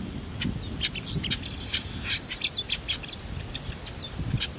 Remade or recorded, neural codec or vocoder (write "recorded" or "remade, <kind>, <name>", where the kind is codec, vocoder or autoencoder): recorded